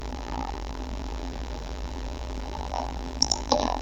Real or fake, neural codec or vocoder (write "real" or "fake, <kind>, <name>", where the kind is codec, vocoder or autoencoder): fake, vocoder, BigVGAN v2